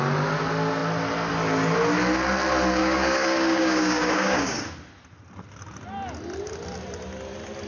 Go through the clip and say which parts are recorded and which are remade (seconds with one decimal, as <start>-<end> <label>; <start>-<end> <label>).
0.0-2.8 recorded; 2.8-4.6 remade; 4.6-7.7 recorded